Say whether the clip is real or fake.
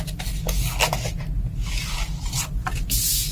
real